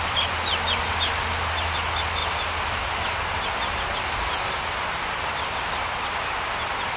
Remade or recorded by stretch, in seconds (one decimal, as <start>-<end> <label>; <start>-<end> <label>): 0.0-7.0 recorded